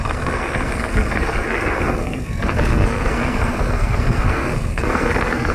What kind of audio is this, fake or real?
fake